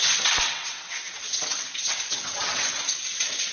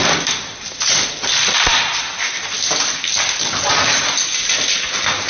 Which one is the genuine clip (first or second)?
second